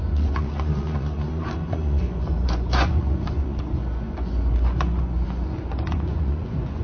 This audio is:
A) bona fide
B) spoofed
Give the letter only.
B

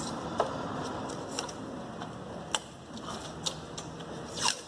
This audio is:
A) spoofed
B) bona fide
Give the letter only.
B